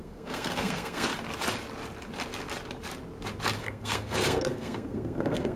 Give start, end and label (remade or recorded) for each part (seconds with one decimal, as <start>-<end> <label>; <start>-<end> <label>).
0.0-1.1 remade; 1.1-3.6 recorded; 3.6-5.6 remade

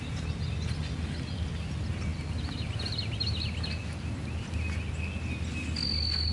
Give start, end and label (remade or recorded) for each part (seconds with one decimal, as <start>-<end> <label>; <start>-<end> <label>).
0.0-6.3 recorded